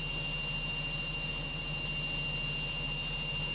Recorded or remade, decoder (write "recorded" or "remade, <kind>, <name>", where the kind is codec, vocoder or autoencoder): recorded